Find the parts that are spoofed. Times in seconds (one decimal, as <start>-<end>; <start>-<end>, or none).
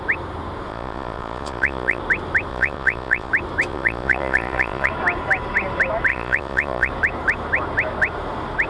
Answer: 0.7-2.0; 2.5-3.3; 3.7-4.9; 6.1-6.9